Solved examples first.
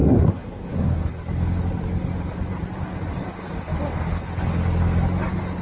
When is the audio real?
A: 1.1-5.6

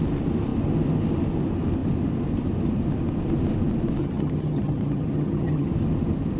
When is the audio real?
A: 0.0-4.0; 5.7-6.4